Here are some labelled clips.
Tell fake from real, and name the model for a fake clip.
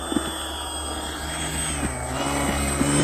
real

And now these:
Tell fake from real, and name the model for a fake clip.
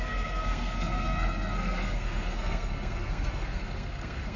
fake, codec, SNAC